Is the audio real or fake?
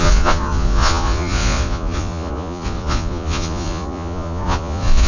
fake